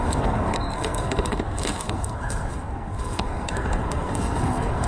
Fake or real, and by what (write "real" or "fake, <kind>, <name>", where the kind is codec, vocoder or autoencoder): fake, codec, SNAC